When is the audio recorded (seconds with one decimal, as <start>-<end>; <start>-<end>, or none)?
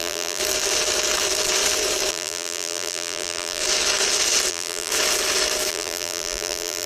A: 0.4-2.1; 3.6-4.5; 4.9-5.7